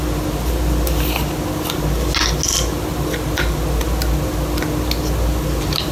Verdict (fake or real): real